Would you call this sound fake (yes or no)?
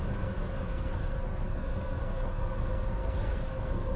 yes